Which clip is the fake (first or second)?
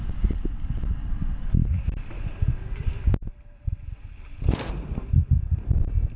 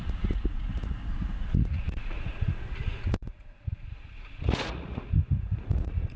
second